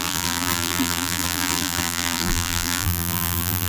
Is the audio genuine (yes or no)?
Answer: no